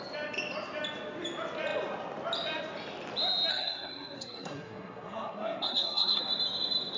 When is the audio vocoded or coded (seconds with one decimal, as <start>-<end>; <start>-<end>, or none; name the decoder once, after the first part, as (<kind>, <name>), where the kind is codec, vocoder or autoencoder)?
3.5-6.2 (codec, SNAC)